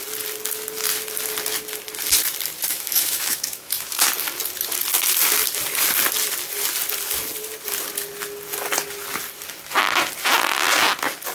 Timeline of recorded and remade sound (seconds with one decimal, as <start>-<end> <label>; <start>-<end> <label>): 0.0-2.7 recorded; 2.7-4.0 remade; 4.0-11.3 recorded